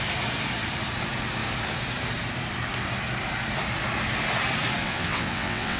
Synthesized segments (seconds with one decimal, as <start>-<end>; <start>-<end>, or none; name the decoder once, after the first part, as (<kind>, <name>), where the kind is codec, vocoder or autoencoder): 4.8-5.8 (vocoder, WaveNeXt)